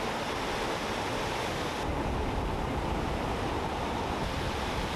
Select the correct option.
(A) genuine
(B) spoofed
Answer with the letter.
A